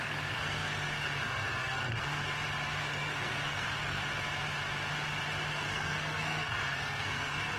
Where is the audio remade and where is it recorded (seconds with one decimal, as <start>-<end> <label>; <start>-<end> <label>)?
0.0-2.2 remade; 2.2-2.8 recorded; 2.8-4.0 remade; 4.0-5.5 recorded; 5.5-7.6 remade